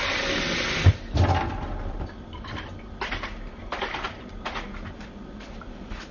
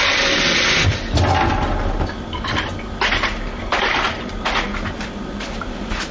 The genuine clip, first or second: second